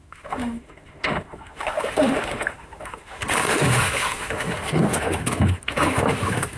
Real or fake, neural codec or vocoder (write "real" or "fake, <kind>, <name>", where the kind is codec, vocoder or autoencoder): fake, autoencoder, DAC-VAE